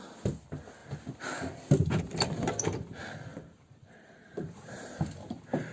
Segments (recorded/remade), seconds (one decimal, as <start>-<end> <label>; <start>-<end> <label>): 0.0-3.3 recorded; 3.3-5.0 remade; 5.0-5.7 recorded